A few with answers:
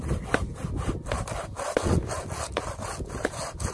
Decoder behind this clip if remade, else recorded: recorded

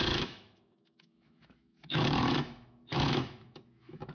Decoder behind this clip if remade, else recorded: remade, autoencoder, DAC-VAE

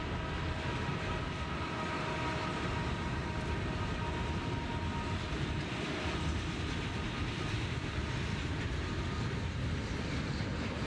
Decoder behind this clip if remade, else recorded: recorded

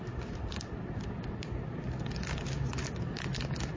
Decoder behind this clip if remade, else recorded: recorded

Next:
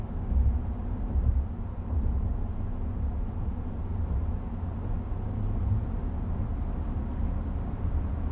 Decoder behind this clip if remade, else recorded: recorded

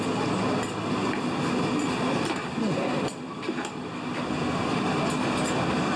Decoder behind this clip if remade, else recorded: recorded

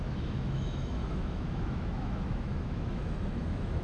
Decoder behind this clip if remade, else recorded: remade, autoencoder, DAC-VAE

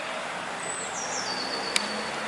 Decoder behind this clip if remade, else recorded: recorded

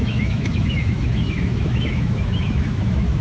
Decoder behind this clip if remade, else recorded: remade, autoencoder, DAC-VAE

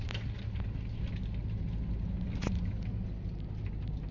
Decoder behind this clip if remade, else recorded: recorded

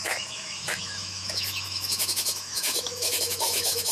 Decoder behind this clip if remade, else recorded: remade, autoencoder, DAC-VAE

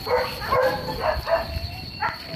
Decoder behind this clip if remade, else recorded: recorded